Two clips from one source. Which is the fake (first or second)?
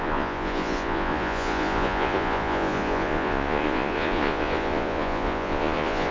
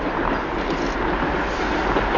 first